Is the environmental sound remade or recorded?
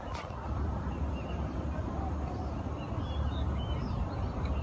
recorded